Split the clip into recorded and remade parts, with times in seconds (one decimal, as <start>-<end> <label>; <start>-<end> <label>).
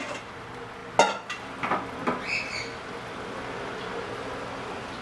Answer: 0.0-5.0 recorded